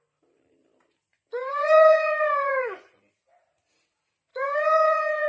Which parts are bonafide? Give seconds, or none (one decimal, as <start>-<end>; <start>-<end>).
0.0-1.1; 3.0-4.3